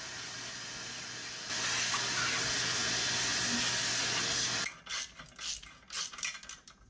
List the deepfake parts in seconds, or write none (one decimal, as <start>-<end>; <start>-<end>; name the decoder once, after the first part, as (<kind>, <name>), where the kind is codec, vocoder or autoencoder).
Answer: none